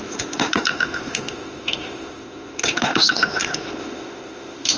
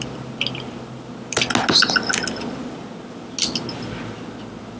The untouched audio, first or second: second